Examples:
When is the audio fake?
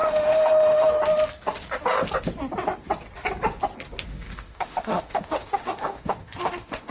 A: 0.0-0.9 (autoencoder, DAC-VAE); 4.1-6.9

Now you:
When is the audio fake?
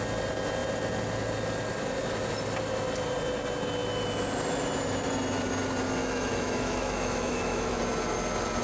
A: 6.0-7.8 (autoencoder, DAC-VAE)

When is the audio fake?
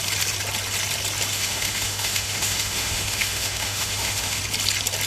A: 1.3-4.4 (autoencoder, DAC-VAE)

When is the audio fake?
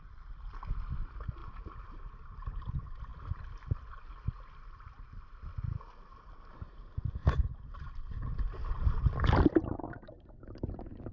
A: none